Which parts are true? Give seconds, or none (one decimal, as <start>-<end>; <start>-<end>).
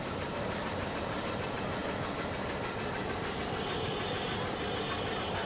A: 1.8-5.1